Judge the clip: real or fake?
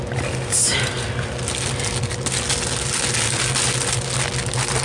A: real